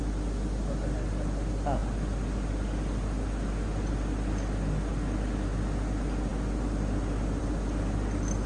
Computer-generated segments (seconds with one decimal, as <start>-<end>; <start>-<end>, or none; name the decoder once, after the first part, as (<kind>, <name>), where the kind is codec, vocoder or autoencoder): none